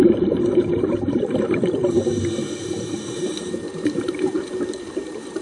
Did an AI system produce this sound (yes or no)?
yes